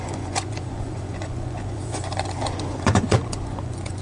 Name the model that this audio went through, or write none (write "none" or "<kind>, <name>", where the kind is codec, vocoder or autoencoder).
vocoder, Vocos